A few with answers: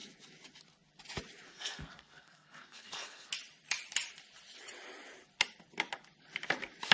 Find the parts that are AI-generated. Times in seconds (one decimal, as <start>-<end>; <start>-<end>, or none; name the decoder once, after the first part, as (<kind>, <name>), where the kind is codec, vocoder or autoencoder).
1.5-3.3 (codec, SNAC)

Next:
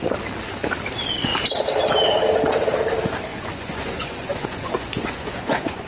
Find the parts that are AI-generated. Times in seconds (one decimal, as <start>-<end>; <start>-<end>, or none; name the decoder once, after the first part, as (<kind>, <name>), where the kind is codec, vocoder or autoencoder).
3.3-5.9 (vocoder, Vocos)

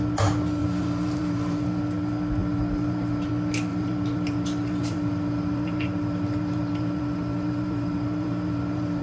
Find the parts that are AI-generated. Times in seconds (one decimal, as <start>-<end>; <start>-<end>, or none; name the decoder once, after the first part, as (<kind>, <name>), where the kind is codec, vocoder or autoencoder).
0.6-1.8 (vocoder, BigVGAN v2); 2.4-3.3; 3.7-9.0

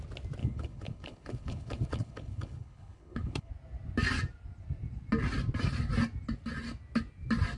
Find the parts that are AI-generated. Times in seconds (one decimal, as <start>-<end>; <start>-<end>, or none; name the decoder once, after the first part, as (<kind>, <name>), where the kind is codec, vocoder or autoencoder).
0.4-3.5 (codec, HILCodec)

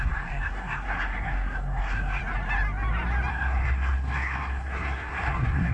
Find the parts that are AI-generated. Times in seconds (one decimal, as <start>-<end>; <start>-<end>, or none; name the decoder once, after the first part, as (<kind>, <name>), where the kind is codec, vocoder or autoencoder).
0.0-2.2 (codec, SNAC); 3.3-5.7